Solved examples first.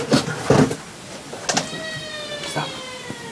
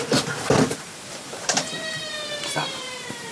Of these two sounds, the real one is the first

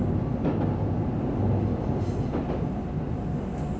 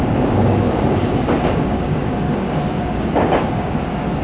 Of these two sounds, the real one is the first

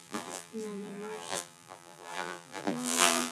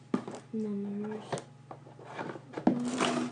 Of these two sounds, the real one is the second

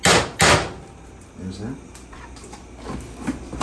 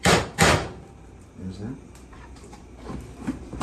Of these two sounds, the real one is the first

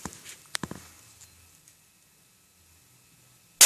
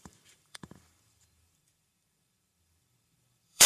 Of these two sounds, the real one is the first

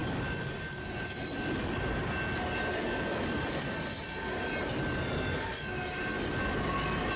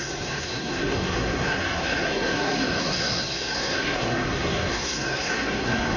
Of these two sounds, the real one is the first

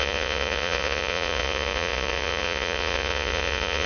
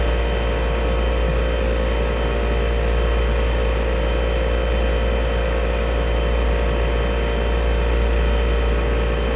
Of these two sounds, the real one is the second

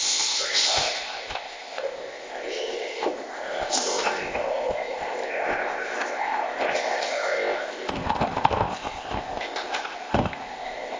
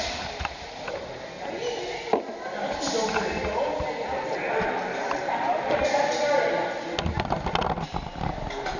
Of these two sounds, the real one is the second